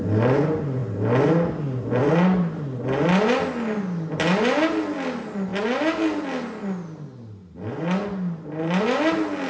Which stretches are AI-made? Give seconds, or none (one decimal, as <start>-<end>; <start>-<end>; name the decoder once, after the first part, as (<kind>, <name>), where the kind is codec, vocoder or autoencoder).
none